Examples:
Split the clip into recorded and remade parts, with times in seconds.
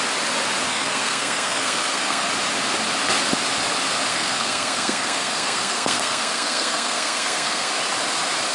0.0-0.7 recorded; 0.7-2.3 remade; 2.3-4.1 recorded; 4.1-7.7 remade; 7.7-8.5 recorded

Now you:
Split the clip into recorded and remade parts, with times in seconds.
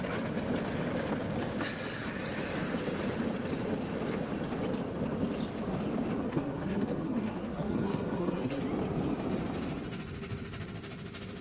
0.0-6.2 recorded; 6.2-8.6 remade; 8.6-11.4 recorded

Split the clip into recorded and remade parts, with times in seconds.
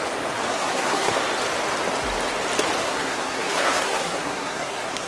0.0-0.5 recorded; 0.5-1.2 remade; 1.2-2.8 recorded; 2.8-5.1 remade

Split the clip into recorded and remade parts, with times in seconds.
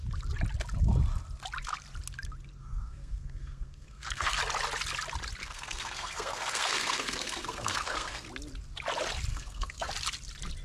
0.0-2.6 recorded; 2.6-4.4 remade; 4.4-5.4 recorded; 5.4-8.3 remade; 8.3-9.3 recorded; 9.3-9.9 remade; 9.9-10.6 recorded